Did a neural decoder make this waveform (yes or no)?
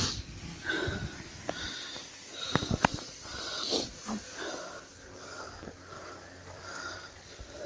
no